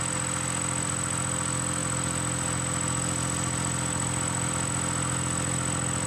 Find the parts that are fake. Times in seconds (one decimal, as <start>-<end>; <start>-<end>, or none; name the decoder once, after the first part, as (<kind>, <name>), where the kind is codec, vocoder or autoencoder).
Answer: 1.8-4.5 (vocoder, BigVGAN v2)